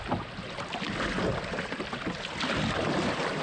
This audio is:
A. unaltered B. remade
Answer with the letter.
A